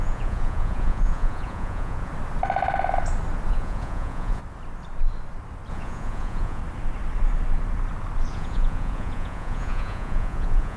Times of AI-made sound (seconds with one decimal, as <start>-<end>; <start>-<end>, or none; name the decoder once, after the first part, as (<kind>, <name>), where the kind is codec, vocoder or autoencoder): 0.0-2.1 (vocoder, Vocos); 3.5-4.4; 5.7-6.6; 8.3-10.8